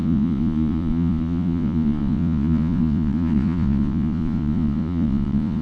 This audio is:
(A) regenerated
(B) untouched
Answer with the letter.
A